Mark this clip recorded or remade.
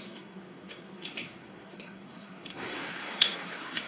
remade